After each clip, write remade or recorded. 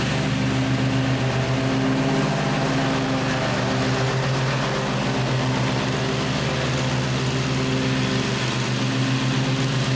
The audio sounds recorded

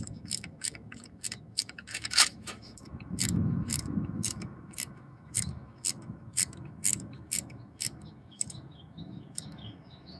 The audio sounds remade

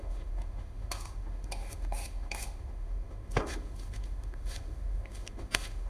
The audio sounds remade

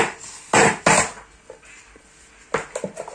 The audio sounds recorded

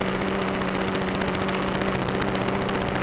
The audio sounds recorded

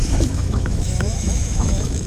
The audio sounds remade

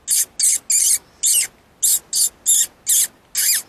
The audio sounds recorded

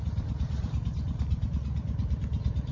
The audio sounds recorded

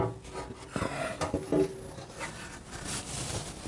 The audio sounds recorded